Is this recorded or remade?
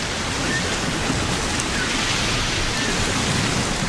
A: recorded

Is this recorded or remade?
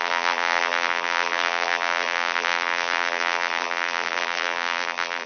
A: remade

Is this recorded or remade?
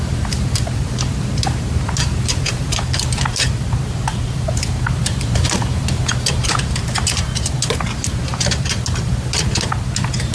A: remade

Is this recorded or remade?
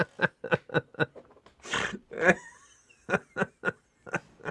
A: recorded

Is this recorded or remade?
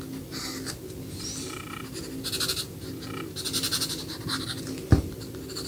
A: recorded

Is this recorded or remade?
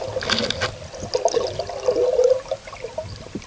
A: recorded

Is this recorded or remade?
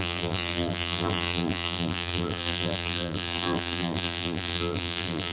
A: remade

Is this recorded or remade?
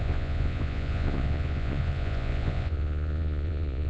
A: remade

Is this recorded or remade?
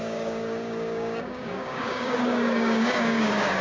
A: remade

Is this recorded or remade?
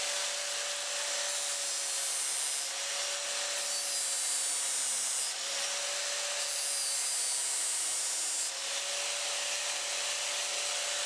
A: recorded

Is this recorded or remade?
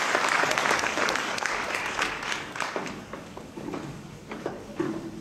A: remade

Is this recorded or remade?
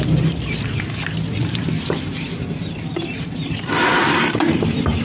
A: recorded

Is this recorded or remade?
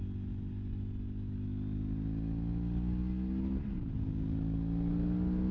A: recorded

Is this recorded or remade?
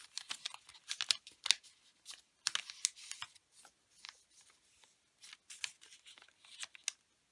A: recorded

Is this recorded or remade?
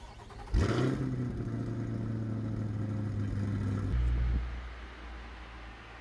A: recorded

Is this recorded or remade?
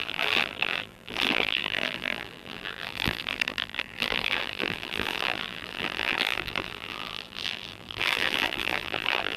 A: remade